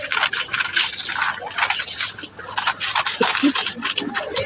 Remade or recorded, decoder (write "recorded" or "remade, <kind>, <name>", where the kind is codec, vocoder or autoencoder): recorded